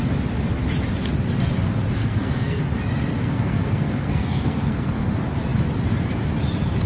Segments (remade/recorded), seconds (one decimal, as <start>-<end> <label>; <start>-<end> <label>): 0.0-2.0 recorded; 2.0-2.6 remade; 2.6-3.2 recorded; 3.2-5.1 remade; 5.1-6.9 recorded